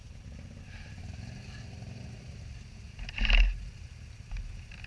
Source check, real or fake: fake